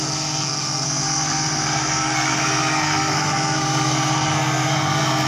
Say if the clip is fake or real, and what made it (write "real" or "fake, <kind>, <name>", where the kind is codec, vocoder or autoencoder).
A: fake, codec, SNAC